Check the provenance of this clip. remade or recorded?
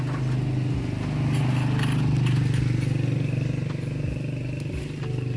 recorded